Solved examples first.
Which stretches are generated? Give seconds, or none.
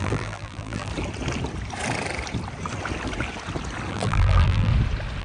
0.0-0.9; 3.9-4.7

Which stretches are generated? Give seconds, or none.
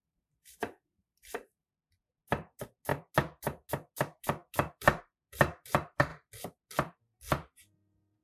0.0-1.7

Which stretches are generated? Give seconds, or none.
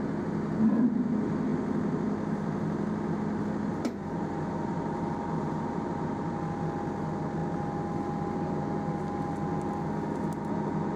none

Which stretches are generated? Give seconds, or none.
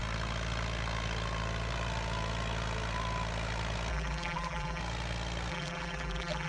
3.9-4.8; 5.5-6.5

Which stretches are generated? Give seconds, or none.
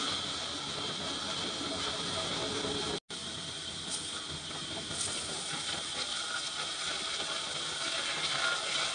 3.2-5.3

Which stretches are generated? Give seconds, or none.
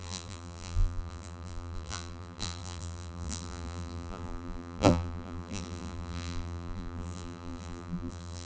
0.0-8.5